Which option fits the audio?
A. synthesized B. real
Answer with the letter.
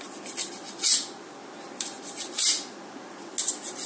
B